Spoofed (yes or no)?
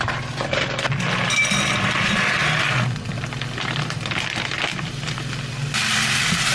no